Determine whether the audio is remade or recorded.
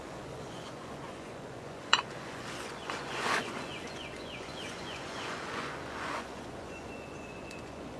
remade